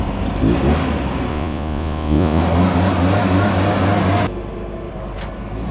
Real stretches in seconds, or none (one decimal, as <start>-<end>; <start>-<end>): 0.0-1.3; 2.4-5.7